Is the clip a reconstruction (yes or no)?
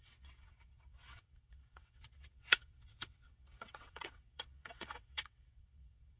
yes